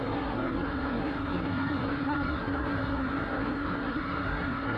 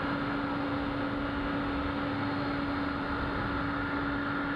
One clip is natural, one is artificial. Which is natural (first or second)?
second